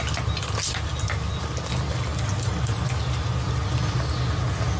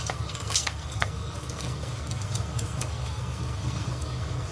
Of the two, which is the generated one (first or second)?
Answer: second